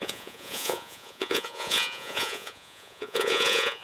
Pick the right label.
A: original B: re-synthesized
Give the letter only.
B